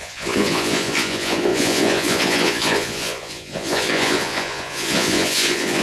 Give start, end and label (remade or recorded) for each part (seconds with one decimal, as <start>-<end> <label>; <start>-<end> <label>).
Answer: 0.0-5.8 remade